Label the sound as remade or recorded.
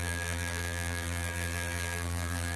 remade